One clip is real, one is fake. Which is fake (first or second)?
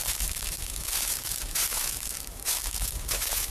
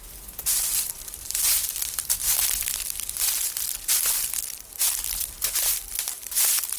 first